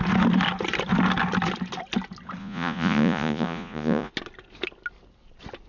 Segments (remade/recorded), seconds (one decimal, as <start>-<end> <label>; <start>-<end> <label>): 0.0-2.4 recorded; 2.4-4.1 remade; 4.1-5.7 recorded